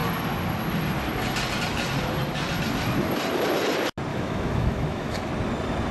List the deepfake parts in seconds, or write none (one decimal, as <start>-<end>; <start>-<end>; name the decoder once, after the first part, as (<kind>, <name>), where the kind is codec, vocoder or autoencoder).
4.1-5.3 (autoencoder, DAC-VAE)